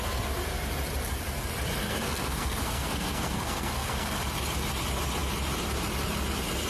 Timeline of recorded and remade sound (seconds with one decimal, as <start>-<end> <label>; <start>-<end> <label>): 0.0-1.8 recorded; 1.8-4.2 remade; 4.2-6.7 recorded